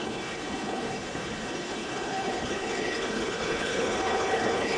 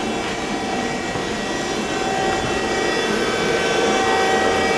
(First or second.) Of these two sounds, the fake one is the first